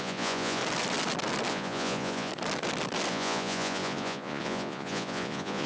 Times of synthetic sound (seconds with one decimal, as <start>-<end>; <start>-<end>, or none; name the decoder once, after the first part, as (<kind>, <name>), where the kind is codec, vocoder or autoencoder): 0.0-0.6 (vocoder, Vocos); 1.5-2.3; 3.1-5.7